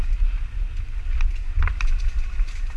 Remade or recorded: recorded